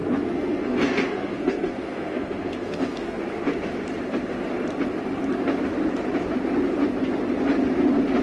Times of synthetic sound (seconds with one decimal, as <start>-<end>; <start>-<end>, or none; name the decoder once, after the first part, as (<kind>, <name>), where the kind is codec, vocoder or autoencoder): 0.0-3.2 (codec, SNAC)